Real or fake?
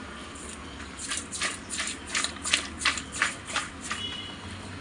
real